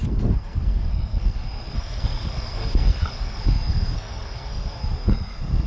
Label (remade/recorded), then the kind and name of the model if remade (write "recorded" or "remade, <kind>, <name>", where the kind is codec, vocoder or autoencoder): remade, codec, SNAC